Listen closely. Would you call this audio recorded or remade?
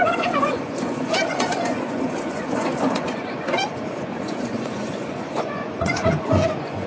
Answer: remade